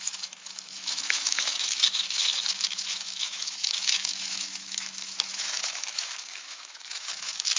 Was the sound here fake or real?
fake